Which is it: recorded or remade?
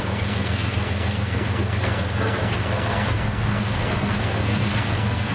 remade